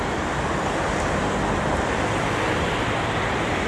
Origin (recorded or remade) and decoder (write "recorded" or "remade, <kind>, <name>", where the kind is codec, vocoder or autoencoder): recorded